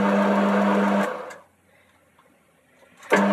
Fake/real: real